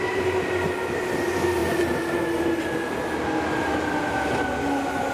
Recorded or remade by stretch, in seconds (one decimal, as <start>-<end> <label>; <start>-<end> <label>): 0.0-5.1 recorded